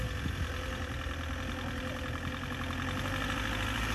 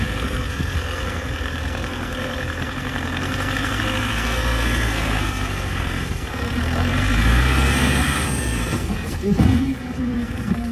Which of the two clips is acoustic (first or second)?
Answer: first